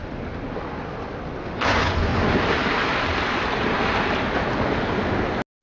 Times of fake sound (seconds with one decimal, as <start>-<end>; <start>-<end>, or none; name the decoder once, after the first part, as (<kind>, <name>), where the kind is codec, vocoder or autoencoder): 1.7-2.1 (vocoder, Vocos)